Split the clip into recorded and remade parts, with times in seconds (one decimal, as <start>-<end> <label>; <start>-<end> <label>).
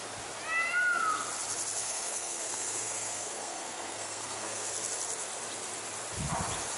0.0-1.8 recorded; 1.8-4.7 remade; 4.7-6.8 recorded